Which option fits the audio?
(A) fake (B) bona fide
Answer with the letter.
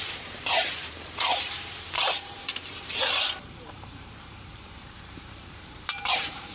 A